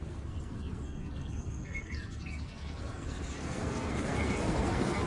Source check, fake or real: fake